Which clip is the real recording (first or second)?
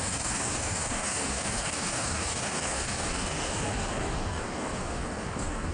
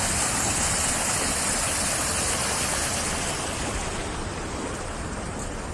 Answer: second